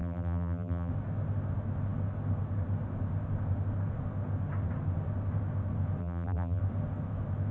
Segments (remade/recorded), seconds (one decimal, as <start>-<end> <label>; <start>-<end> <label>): 0.0-0.9 remade; 0.9-6.0 recorded; 6.0-6.6 remade; 6.6-7.5 recorded